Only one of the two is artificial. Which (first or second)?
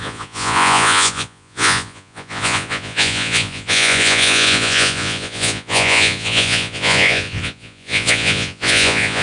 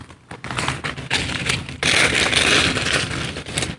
first